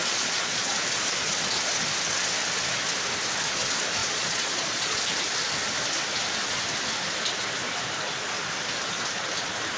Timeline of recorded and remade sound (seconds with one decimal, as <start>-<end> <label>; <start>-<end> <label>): 0.0-0.7 remade; 0.7-4.0 recorded; 4.0-5.0 remade; 5.0-9.8 recorded